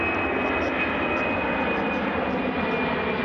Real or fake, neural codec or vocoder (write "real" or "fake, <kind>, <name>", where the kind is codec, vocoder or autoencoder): real